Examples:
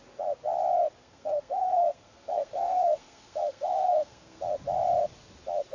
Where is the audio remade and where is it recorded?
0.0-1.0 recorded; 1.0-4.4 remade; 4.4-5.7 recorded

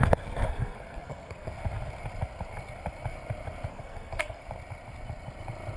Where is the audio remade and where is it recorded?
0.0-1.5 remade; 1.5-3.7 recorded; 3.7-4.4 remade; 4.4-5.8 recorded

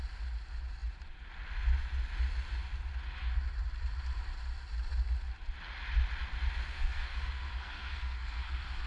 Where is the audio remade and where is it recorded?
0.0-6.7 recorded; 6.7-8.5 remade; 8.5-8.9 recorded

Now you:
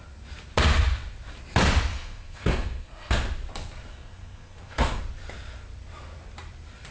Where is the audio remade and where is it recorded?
0.0-1.9 recorded; 1.9-3.1 remade; 3.1-3.9 recorded; 3.9-5.0 remade; 5.0-6.9 recorded

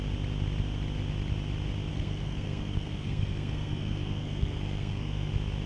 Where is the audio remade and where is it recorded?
0.0-1.9 recorded; 1.9-5.3 remade; 5.3-5.7 recorded